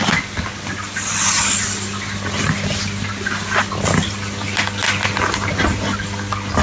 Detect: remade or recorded recorded